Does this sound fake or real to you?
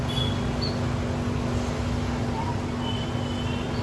real